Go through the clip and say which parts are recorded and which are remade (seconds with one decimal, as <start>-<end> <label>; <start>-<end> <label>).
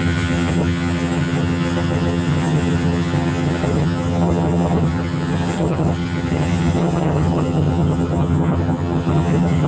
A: 0.0-9.7 remade